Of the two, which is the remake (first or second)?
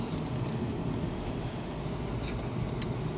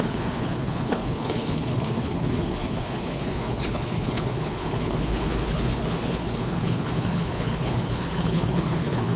second